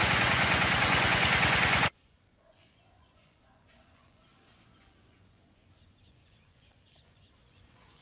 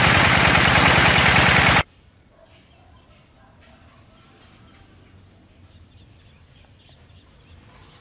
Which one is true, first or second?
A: second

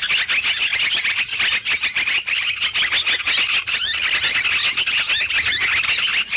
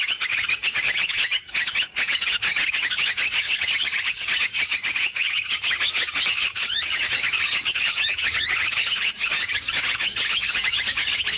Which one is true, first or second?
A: first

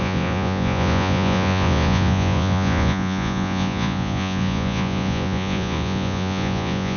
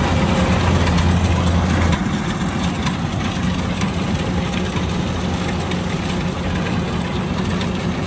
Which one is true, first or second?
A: second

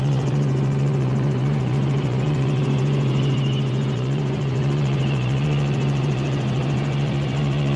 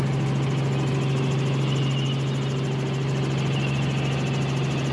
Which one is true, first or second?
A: second